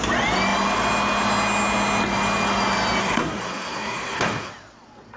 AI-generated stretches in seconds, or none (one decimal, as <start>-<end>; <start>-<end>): 3.0-4.5